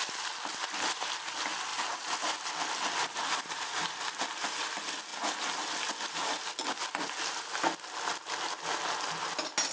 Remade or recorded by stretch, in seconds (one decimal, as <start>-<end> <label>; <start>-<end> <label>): 0.0-9.7 recorded